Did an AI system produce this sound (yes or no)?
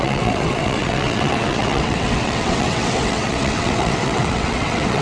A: yes